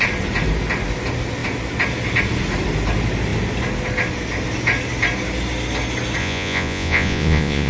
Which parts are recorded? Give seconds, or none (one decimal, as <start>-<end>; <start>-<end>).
0.0-6.2

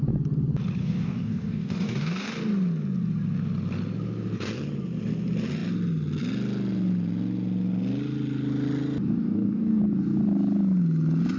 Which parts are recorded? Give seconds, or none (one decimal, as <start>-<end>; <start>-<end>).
0.0-0.8; 2.3-9.2; 9.8-11.4

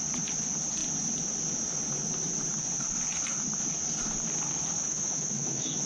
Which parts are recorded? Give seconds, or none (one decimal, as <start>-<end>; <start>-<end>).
0.0-4.8

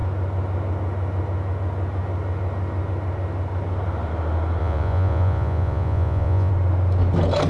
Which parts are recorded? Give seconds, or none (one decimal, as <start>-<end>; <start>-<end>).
0.0-4.6; 6.5-7.5

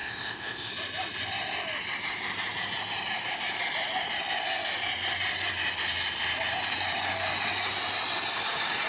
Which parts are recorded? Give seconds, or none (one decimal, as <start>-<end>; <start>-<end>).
0.7-8.9

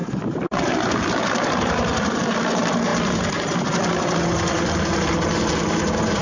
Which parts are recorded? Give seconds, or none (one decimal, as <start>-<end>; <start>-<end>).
none

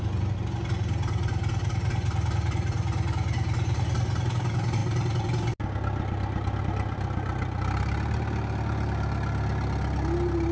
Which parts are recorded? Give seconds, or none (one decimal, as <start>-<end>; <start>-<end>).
0.0-10.5